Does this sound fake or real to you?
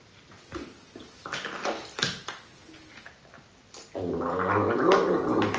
real